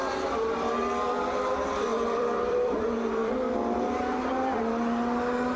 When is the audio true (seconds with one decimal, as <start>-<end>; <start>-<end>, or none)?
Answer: 0.0-1.9; 2.8-5.6